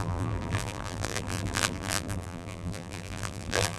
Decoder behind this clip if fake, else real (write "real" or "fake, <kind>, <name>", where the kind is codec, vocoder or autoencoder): fake, vocoder, BigVGAN v2